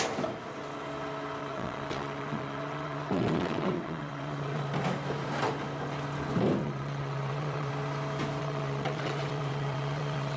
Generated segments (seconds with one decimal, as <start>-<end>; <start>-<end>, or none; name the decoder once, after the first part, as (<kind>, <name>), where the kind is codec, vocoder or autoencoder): 1.4-4.6 (vocoder, WaveNeXt); 6.6-7.7; 8.4-10.4